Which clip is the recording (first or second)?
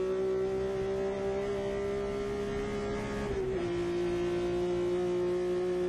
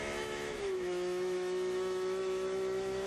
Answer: first